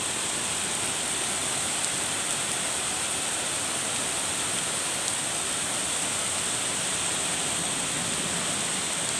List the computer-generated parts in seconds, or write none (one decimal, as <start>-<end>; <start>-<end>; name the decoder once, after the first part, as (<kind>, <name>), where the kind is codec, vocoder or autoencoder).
none